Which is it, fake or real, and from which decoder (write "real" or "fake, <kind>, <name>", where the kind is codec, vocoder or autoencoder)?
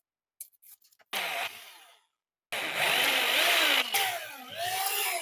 real